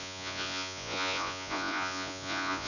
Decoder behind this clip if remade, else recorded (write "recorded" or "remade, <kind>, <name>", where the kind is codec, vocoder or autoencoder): remade, vocoder, Vocos